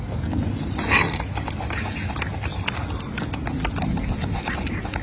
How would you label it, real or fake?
real